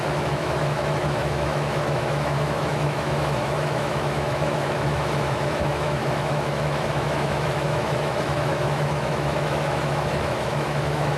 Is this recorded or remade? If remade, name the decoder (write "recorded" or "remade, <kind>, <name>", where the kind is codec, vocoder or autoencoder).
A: remade, autoencoder, DAC-VAE